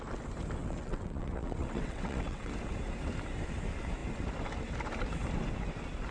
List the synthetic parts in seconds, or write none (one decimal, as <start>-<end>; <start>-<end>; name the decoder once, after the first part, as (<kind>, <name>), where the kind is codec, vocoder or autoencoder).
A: 0.6-2.5 (vocoder, WaveNeXt)